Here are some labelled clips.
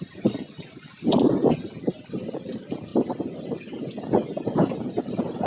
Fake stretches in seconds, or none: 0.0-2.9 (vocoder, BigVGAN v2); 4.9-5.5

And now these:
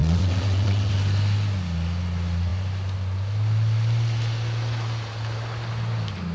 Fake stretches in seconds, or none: 0.0-0.9 (vocoder, WaveNeXt)

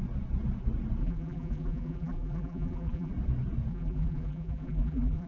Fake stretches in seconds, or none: 1.0-3.1 (vocoder, BigVGAN v2); 3.7-5.3

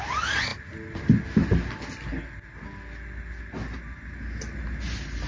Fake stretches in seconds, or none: none

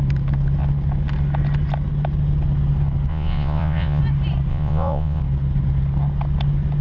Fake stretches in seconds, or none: 3.1-4.0 (vocoder, Vocos); 4.5-5.2